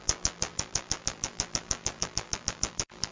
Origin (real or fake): fake